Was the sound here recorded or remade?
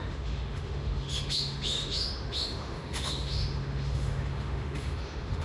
remade